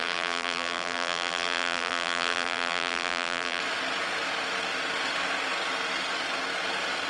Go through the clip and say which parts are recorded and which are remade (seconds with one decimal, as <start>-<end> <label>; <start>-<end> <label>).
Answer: 0.0-3.6 remade; 3.6-7.1 recorded